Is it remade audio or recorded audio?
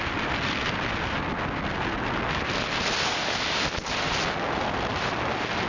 recorded